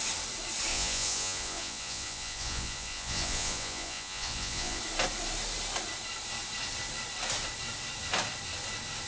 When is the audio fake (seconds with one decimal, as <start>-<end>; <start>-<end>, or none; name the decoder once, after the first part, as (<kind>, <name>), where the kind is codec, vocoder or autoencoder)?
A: 0.7-4.8 (vocoder, Vocos)